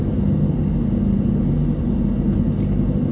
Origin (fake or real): real